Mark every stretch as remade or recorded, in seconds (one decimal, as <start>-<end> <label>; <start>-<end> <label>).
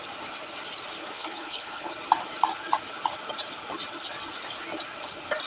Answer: 0.0-1.0 recorded; 1.0-1.9 remade; 1.9-5.5 recorded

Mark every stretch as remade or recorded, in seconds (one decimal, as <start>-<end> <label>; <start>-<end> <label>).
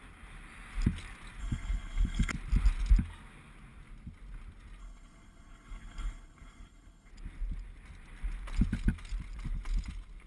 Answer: 0.0-1.4 recorded; 1.4-2.3 remade; 2.3-4.8 recorded; 4.8-7.1 remade; 7.1-10.3 recorded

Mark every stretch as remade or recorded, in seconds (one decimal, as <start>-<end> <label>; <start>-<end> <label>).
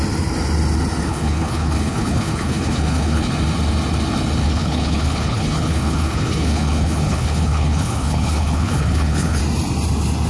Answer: 0.0-1.1 recorded; 1.1-3.3 remade; 3.3-4.4 recorded; 4.4-9.4 remade; 9.4-10.3 recorded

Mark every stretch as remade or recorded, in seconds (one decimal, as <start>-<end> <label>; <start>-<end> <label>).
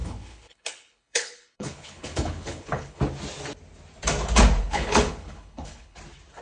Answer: 0.0-3.0 remade; 3.0-4.6 recorded; 4.6-6.0 remade; 6.0-6.4 recorded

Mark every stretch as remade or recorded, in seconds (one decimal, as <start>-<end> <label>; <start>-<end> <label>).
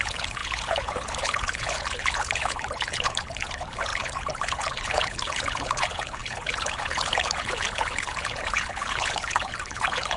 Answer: 0.0-10.2 remade